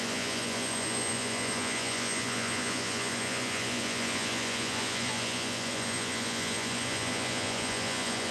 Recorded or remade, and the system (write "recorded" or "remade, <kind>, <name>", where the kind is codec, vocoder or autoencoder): remade, vocoder, Vocos